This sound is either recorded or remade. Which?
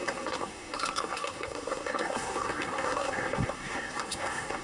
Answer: remade